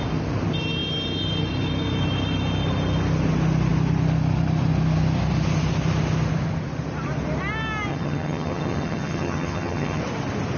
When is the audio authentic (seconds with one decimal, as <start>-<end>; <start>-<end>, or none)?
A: 0.0-7.9; 10.0-10.6